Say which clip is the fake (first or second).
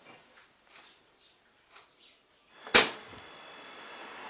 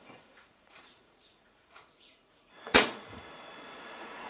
second